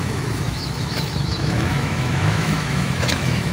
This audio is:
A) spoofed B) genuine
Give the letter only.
A